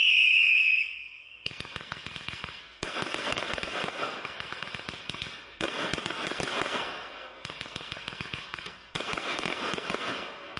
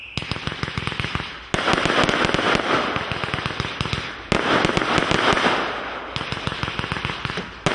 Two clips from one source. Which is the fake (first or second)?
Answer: first